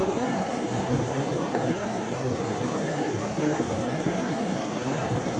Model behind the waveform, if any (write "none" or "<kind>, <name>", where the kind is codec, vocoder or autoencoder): codec, SNAC